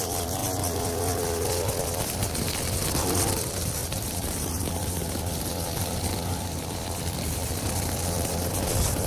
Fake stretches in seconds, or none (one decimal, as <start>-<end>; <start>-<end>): 0.0-0.4; 2.0-9.1